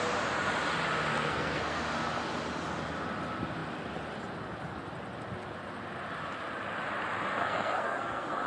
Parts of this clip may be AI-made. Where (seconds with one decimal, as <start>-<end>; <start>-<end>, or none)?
1.1-1.8; 7.4-8.5